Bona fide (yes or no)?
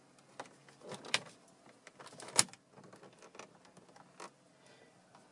yes